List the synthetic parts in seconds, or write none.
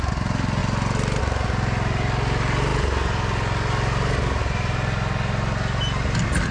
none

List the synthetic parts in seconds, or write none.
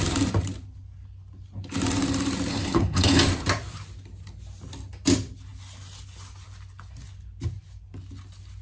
2.5-3.2 (codec, HILCodec)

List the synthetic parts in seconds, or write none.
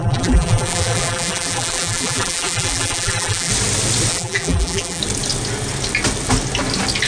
0.0-3.5 (vocoder, BigVGAN v2); 4.1-5.0